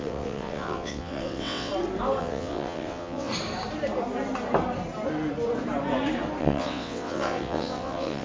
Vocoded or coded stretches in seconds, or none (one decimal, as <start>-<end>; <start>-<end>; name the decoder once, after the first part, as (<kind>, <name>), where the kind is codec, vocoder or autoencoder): 0.0-1.7 (vocoder, WaveNeXt); 2.2-3.3; 6.4-8.2